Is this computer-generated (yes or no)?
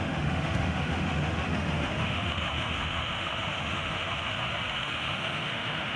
yes